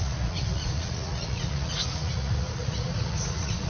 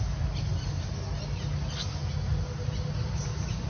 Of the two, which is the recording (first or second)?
second